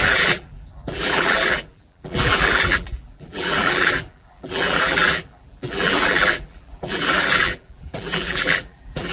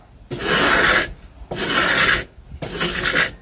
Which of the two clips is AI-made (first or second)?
first